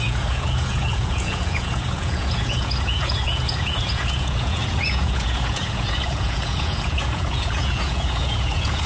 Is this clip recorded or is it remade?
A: remade